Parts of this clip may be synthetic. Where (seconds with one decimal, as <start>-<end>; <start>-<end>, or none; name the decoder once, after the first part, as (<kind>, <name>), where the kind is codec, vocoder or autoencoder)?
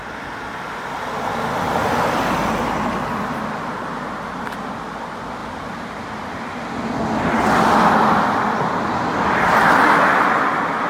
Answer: none